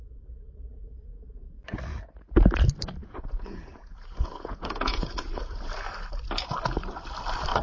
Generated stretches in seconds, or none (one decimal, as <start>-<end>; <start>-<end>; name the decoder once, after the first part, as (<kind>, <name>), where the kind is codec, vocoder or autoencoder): 3.0-5.6 (vocoder, Vocos)